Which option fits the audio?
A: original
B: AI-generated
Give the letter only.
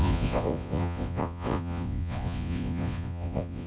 B